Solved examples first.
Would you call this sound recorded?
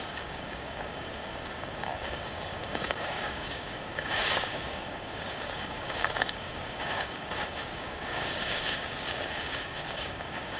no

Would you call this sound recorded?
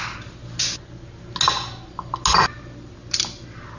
yes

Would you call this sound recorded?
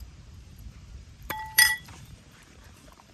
no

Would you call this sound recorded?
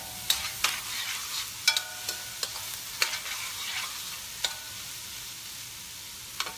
yes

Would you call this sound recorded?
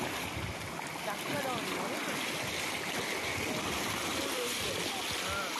yes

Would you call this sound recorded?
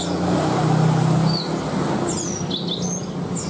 yes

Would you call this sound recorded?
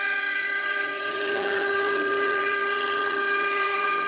no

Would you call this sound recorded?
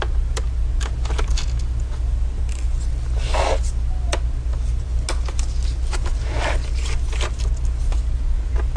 yes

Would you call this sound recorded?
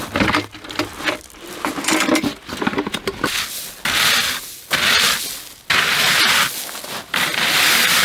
yes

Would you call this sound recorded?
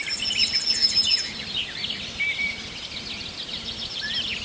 yes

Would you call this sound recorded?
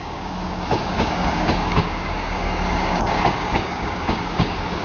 no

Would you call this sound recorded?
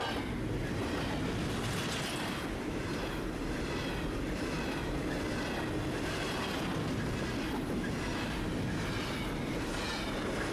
yes